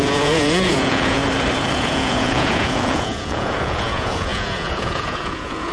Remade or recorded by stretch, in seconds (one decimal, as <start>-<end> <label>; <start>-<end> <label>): 0.0-1.2 remade; 1.2-1.7 recorded; 1.7-5.7 remade